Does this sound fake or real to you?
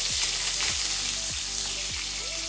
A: real